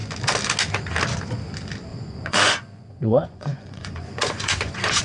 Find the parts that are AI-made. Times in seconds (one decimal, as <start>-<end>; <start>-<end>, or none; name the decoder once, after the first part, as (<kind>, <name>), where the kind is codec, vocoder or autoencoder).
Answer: 1.9-5.0 (vocoder, Vocos)